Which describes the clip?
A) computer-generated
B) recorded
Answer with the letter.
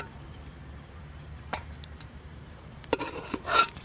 A